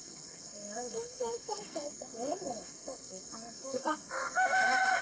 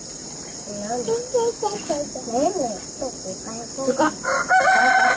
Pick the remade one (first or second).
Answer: first